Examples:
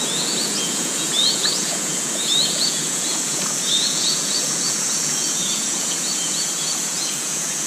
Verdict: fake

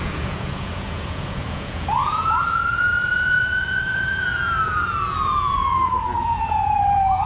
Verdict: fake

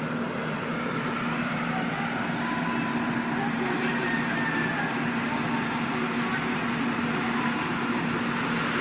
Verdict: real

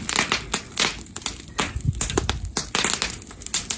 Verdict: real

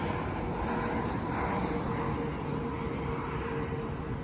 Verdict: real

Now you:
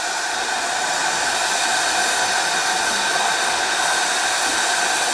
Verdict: real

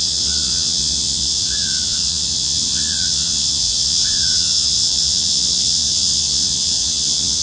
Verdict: fake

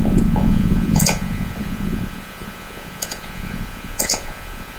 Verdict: fake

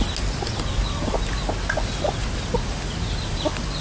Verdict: real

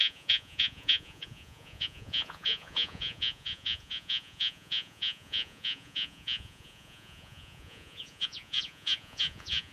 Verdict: fake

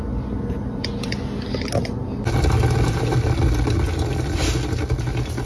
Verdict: real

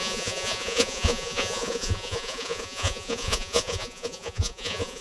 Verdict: fake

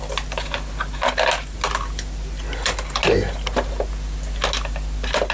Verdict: real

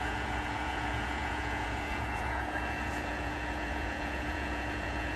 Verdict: fake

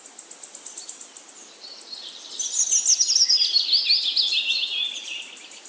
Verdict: real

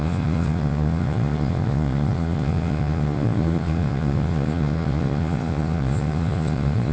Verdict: fake